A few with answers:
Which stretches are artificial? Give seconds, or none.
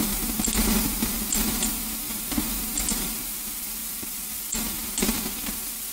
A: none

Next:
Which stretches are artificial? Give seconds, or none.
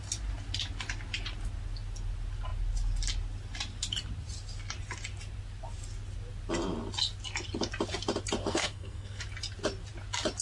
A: 8.4-9.2 (codec, SNAC)